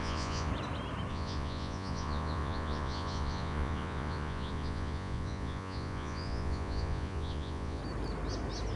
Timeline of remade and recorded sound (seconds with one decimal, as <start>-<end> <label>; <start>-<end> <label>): 0.0-0.5 remade; 0.5-1.1 recorded; 1.1-7.8 remade; 7.8-8.8 recorded